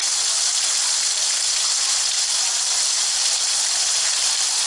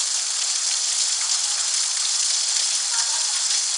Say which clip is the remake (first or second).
first